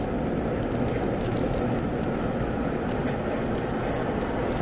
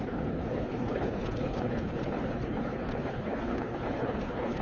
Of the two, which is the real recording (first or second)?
first